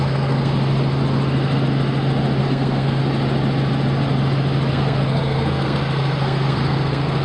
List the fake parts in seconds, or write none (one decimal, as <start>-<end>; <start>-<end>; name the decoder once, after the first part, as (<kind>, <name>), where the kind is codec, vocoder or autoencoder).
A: 0.0-0.5 (codec, SNAC); 2.4-3.0; 4.7-7.2